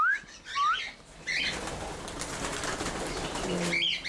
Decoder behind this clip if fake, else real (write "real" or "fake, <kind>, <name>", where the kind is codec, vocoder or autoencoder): real